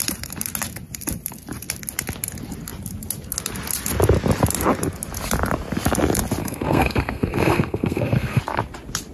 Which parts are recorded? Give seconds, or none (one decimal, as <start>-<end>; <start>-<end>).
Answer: 0.0-6.4; 8.4-9.1